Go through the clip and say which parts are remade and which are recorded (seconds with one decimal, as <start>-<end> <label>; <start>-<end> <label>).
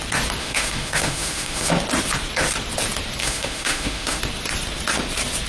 0.0-0.4 recorded; 0.4-1.7 remade; 1.7-3.2 recorded; 3.2-4.2 remade; 4.2-5.5 recorded